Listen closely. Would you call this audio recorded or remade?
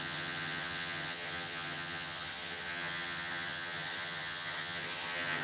remade